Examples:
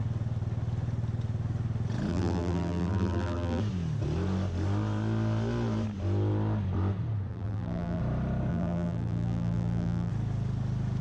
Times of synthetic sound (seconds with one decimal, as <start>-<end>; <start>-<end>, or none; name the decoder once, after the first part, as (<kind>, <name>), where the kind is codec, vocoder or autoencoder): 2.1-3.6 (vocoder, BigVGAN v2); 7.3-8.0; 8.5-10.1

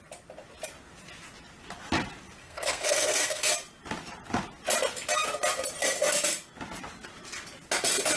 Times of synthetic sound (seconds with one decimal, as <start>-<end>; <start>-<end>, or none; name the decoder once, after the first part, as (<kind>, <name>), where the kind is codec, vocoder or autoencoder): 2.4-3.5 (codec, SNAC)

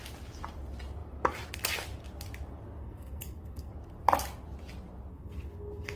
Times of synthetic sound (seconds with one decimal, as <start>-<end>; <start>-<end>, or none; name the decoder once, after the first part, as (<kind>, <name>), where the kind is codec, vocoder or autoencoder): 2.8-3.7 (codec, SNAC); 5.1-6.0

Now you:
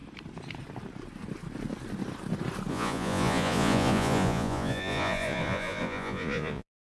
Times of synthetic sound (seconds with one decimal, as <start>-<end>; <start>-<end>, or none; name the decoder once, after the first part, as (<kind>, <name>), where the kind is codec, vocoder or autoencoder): 2.7-6.8 (vocoder, Vocos)

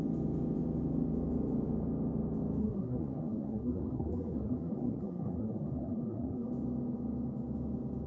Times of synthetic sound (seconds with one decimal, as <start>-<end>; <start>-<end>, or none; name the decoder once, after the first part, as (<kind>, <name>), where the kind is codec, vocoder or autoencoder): 2.6-6.5 (codec, SNAC)